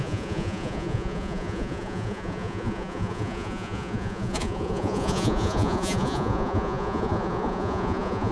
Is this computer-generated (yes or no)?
yes